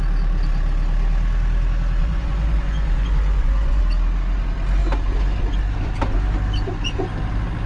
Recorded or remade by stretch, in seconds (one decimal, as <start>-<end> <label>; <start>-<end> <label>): 0.0-2.0 recorded; 2.0-3.8 remade; 3.8-7.7 recorded